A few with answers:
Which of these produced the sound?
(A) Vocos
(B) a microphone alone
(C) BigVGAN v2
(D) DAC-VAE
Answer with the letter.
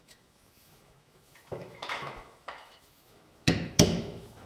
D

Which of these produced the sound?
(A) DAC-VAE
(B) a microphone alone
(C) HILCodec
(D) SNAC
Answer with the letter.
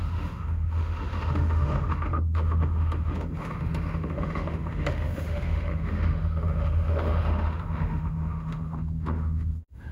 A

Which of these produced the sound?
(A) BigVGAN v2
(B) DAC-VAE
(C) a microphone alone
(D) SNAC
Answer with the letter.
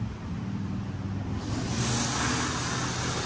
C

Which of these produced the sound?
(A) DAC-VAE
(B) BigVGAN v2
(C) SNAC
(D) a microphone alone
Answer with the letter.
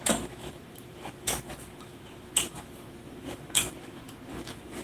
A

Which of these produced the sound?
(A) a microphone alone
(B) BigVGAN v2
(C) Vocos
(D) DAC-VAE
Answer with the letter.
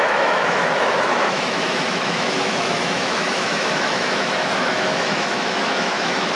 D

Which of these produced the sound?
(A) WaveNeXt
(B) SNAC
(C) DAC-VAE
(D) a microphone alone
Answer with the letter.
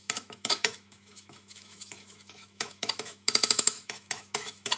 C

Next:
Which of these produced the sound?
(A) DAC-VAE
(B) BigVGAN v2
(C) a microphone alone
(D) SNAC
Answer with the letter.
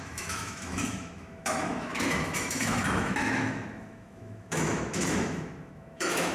A